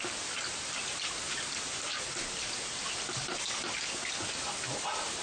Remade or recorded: recorded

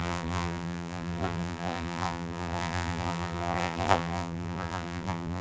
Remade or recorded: remade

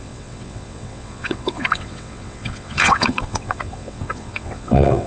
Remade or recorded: remade